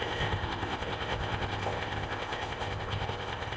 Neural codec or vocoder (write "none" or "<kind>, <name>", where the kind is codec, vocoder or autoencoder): codec, ZipCodec